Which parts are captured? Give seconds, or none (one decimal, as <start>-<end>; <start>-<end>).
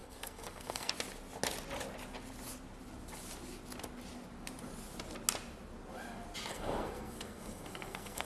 0.9-6.5